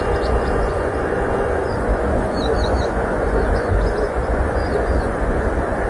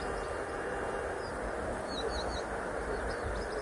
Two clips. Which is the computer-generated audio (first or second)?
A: first